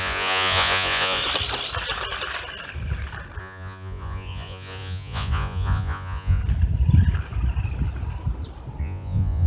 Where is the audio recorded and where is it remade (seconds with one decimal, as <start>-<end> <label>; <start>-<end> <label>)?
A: 0.0-1.2 remade; 1.2-3.4 recorded; 3.4-6.4 remade; 6.4-8.8 recorded; 8.8-9.5 remade